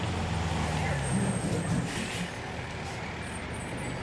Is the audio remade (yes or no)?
no